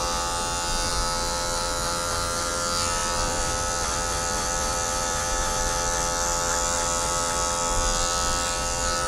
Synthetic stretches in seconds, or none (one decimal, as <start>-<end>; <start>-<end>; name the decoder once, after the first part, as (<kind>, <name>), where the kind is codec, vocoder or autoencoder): 3.0-5.6 (vocoder, BigVGAN v2)